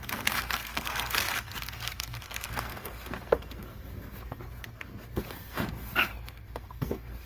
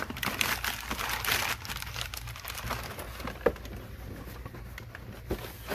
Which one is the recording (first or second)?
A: second